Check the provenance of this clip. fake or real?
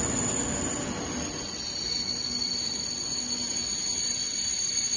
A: real